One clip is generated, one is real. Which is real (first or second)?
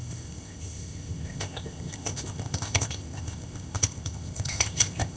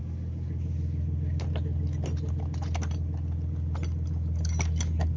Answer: second